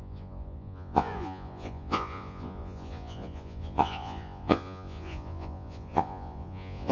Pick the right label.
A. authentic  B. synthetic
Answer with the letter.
B